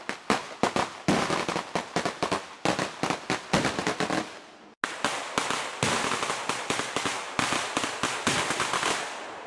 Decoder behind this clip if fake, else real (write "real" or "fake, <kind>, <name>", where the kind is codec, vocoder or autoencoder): real